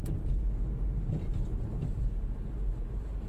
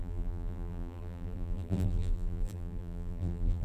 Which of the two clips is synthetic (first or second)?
second